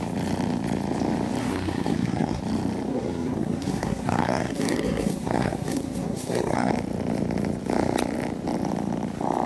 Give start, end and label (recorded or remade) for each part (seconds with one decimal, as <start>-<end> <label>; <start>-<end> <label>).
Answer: 0.0-1.4 recorded; 1.4-2.4 remade; 2.4-2.9 recorded; 2.9-6.7 remade; 6.7-9.5 recorded